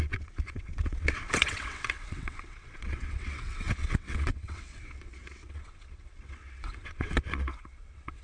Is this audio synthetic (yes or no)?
yes